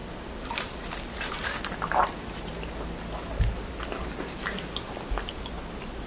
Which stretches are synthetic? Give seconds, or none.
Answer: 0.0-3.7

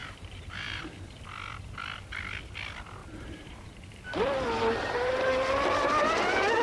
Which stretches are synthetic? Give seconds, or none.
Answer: 0.0-0.8; 3.0-4.0

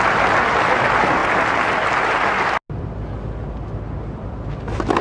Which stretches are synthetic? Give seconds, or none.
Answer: none

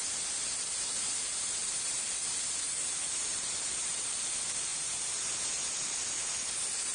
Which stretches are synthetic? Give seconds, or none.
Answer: 0.9-4.3; 4.7-5.4